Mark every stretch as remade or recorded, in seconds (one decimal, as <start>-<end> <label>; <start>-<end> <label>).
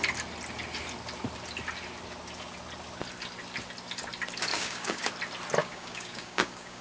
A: 0.0-4.5 recorded; 4.5-5.1 remade; 5.1-5.6 recorded; 5.6-6.8 remade